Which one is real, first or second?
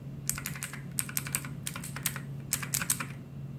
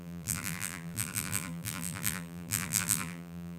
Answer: first